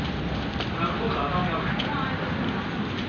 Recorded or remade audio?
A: recorded